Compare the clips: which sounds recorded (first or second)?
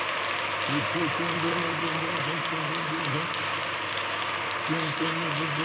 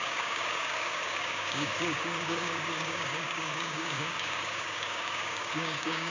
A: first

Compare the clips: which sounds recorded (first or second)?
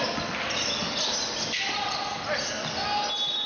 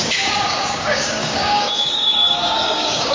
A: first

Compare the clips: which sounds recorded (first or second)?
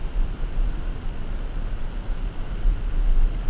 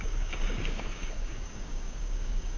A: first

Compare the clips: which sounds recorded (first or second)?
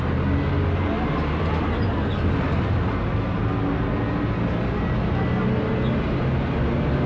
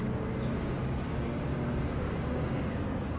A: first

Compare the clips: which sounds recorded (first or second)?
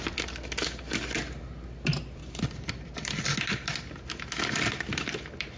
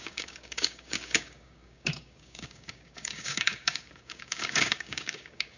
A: first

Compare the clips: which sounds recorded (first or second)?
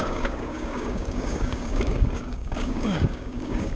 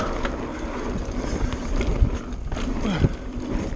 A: second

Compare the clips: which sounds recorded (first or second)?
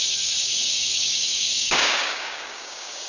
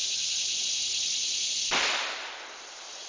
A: second